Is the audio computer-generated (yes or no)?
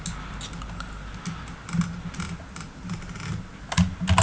no